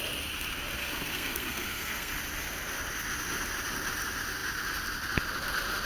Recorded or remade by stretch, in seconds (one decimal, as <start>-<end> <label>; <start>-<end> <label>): 0.0-0.8 recorded; 0.8-2.1 remade; 2.1-5.9 recorded